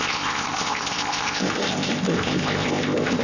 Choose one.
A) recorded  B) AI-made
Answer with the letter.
B